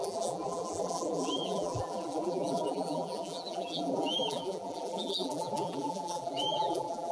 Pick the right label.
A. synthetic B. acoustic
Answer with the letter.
A